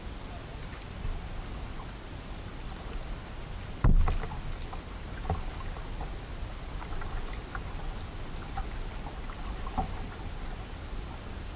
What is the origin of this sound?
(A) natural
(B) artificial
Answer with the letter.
A